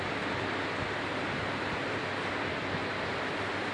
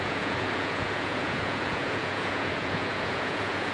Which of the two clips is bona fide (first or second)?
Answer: first